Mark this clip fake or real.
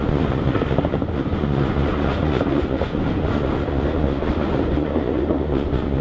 fake